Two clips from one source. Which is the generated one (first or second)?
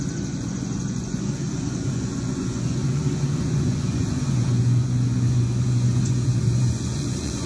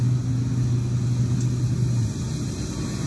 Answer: first